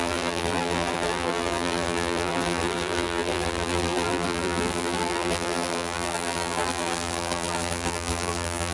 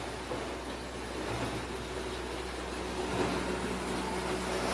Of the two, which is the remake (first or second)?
first